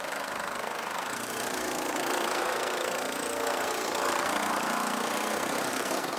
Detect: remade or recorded remade